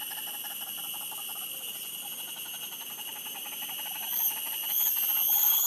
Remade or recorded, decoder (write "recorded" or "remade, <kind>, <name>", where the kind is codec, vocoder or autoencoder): recorded